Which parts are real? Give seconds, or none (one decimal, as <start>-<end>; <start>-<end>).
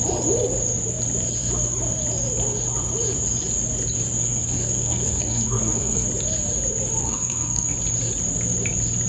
0.0-4.2; 6.1-7.0; 7.7-9.1